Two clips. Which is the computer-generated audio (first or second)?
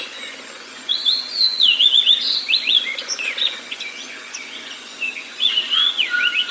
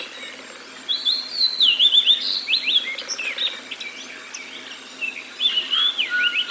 first